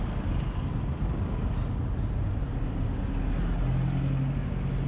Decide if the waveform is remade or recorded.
recorded